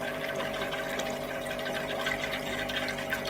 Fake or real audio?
fake